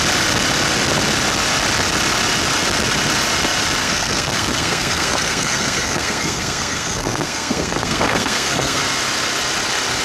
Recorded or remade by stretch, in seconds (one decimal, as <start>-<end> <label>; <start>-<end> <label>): 0.0-3.8 recorded; 3.8-8.8 remade; 8.8-10.0 recorded